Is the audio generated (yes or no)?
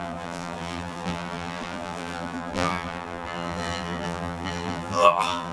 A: yes